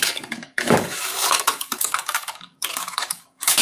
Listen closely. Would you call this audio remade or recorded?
remade